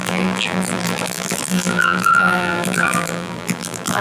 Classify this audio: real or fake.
fake